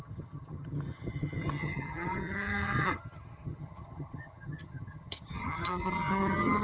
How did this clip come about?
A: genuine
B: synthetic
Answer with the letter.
B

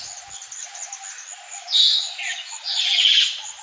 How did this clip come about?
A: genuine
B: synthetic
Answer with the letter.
A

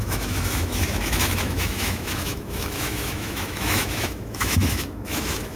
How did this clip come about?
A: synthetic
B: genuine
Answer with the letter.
A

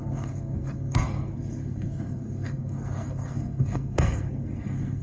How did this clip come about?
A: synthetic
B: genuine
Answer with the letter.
A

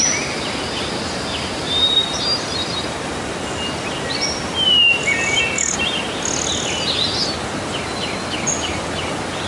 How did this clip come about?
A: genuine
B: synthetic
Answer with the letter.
A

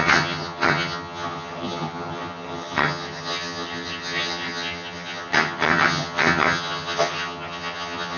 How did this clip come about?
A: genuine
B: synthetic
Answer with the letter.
B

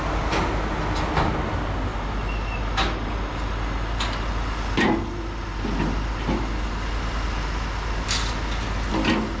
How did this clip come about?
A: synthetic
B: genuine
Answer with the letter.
B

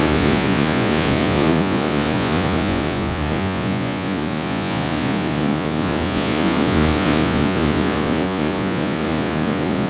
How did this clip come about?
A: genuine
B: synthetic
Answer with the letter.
B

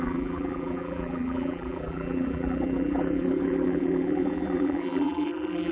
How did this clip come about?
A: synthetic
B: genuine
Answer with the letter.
A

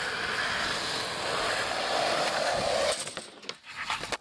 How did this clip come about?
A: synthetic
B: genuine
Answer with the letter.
B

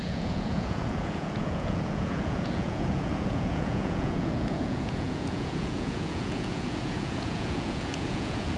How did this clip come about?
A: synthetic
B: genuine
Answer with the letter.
A